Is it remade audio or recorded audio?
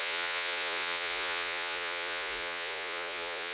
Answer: remade